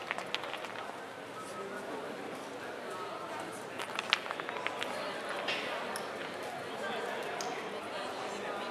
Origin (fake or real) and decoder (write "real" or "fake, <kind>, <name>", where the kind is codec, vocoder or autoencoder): real